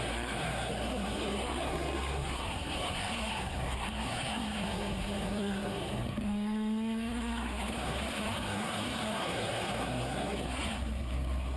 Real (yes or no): no